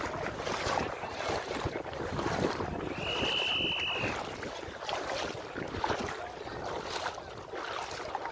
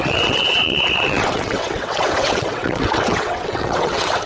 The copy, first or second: second